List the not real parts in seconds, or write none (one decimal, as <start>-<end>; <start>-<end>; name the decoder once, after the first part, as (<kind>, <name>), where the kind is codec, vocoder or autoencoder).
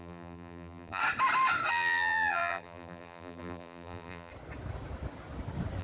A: 0.0-1.0 (vocoder, BigVGAN v2); 1.7-4.3